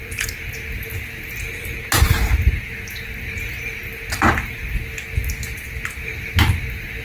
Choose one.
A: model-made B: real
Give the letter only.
B